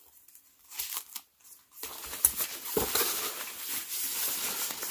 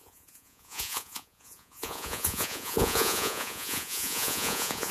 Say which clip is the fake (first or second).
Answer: second